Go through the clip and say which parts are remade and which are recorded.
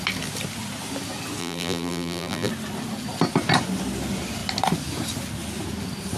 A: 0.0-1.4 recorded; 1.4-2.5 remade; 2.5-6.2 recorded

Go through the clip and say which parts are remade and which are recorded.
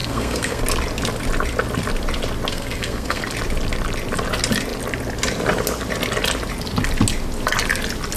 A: 0.0-0.6 remade; 0.6-2.5 recorded; 2.5-3.2 remade; 3.2-8.2 recorded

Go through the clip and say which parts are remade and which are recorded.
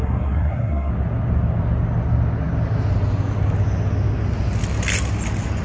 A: 0.0-0.9 remade; 0.9-5.6 recorded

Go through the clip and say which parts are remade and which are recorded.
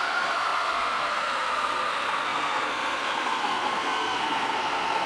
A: 0.0-5.1 remade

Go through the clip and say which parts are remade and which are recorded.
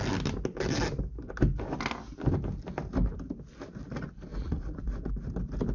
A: 0.0-4.3 recorded; 4.3-5.1 remade; 5.1-5.7 recorded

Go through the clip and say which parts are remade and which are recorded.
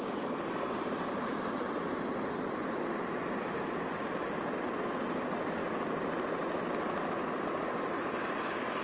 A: 0.0-8.8 recorded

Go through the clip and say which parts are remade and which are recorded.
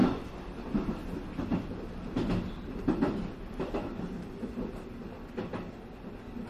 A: 0.0-6.5 recorded